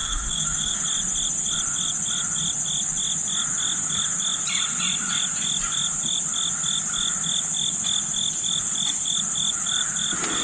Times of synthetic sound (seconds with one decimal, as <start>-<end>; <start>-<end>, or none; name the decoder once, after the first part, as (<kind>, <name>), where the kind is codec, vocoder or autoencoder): 0.0-0.8 (codec, DAC)